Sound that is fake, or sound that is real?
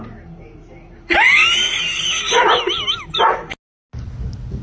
real